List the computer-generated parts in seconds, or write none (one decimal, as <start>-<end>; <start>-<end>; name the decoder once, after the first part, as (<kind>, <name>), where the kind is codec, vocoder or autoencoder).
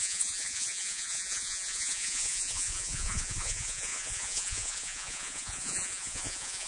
0.0-6.7 (vocoder, Vocos)